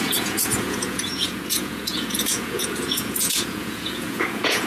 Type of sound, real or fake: fake